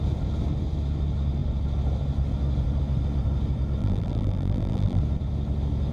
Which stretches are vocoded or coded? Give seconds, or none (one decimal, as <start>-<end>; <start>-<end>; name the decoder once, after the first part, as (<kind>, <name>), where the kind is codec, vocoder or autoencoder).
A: 3.8-5.0 (vocoder, BigVGAN v2)